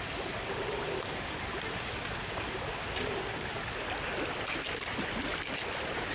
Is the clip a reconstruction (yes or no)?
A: no